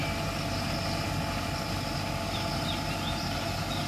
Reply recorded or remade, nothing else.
recorded